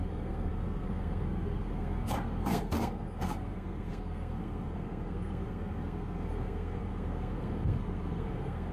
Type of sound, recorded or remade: remade